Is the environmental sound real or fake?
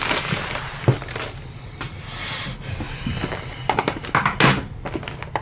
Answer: real